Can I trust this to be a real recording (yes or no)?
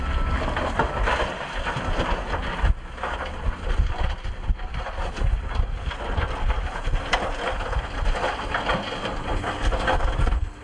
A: yes